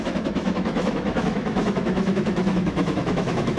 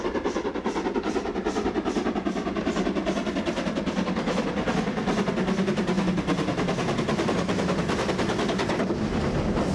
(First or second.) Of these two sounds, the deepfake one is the first